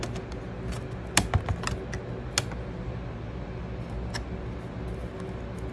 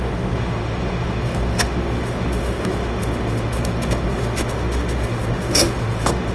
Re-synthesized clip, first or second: second